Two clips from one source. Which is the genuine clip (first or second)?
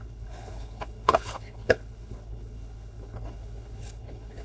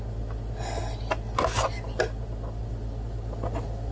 second